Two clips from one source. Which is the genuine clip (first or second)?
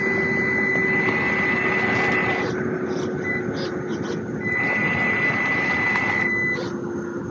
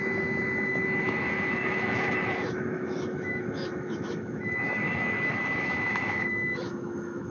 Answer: first